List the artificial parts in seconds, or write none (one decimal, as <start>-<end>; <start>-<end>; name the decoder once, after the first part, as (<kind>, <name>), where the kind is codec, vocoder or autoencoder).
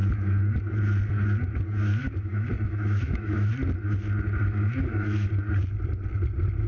2.0-3.5 (autoencoder, DAC-VAE); 4.4-5.3